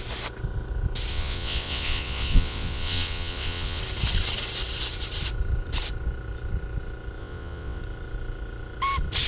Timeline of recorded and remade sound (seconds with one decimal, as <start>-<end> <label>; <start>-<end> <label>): 0.0-1.1 recorded; 1.1-3.8 remade; 3.8-7.2 recorded; 7.2-7.8 remade; 7.8-9.3 recorded